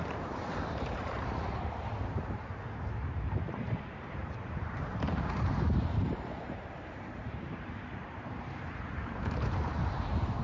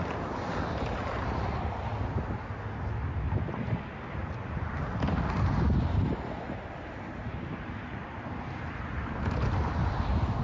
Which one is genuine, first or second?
second